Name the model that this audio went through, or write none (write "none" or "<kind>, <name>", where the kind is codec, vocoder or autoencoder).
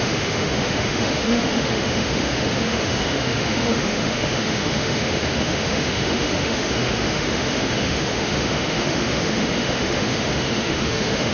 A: autoencoder, DAC-VAE